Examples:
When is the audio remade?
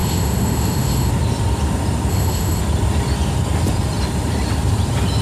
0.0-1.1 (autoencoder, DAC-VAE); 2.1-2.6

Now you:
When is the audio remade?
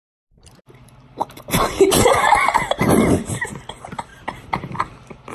0.0-3.2 (vocoder, BigVGAN v2); 4.1-4.7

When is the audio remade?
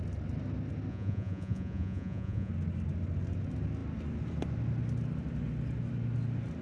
0.9-2.5 (vocoder, Vocos)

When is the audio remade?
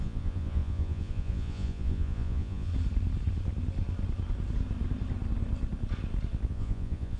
0.0-2.7 (vocoder, Vocos); 6.5-7.2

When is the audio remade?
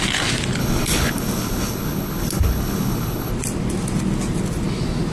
0.6-3.3 (codec, HILCodec)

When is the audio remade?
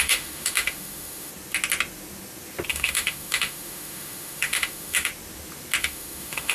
0.0-1.3 (autoencoder, DAC-VAE); 2.7-5.1; 5.8-6.5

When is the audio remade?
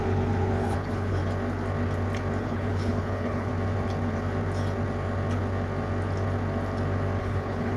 0.0-1.2 (codec, HILCodec); 2.4-3.5; 7.2-7.8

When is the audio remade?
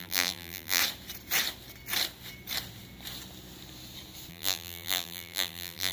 0.0-0.8 (vocoder, BigVGAN v2); 4.3-5.9